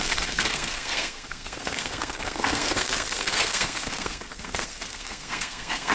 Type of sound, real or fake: fake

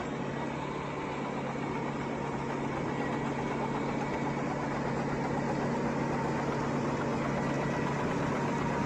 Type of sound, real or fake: real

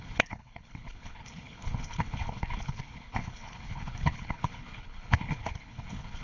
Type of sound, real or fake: fake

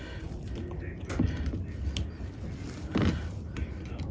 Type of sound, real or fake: real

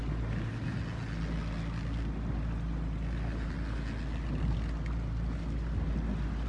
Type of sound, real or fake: real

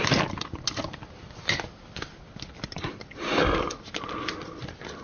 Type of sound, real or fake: real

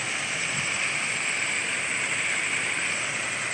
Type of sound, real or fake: real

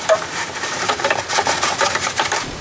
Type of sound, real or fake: fake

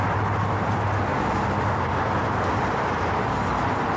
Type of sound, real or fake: real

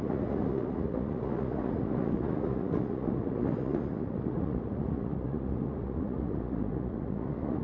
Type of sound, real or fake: fake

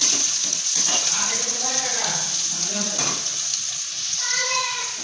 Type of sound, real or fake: fake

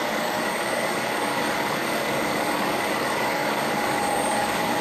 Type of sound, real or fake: fake